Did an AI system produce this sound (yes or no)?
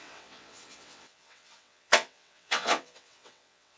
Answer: yes